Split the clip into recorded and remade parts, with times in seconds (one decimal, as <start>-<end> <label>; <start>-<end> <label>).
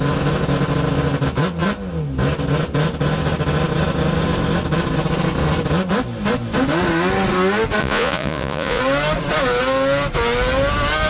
0.0-7.8 recorded; 7.8-8.8 remade; 8.8-11.1 recorded